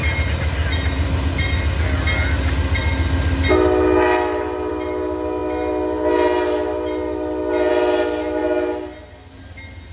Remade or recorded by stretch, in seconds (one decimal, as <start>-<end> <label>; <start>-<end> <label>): 0.0-9.9 recorded